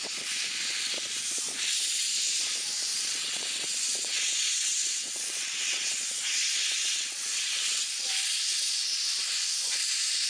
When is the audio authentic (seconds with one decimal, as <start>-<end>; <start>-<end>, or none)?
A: 0.0-2.9; 8.1-10.3